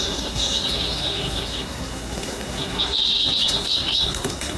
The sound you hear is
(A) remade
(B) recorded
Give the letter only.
A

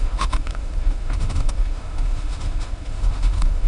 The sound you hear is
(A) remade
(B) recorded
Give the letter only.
A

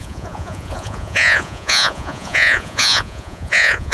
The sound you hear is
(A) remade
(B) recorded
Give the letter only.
A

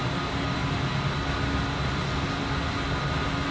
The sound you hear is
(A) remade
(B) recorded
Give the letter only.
B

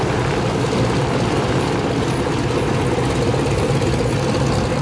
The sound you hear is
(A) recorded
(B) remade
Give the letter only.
B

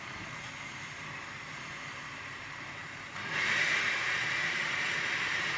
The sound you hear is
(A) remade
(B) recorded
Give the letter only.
A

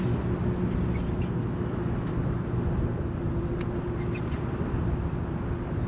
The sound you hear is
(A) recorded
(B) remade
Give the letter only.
A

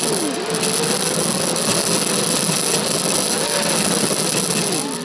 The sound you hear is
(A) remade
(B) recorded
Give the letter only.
B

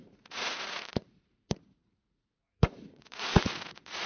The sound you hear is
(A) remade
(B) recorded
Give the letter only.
A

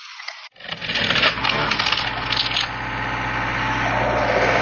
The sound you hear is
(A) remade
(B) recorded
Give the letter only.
B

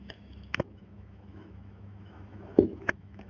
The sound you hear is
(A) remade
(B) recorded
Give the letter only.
A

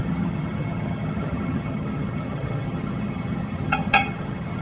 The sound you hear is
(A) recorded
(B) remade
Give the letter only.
B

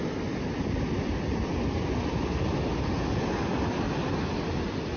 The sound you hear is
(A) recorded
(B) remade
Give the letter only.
A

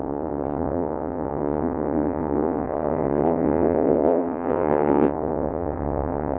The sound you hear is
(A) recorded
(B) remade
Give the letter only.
B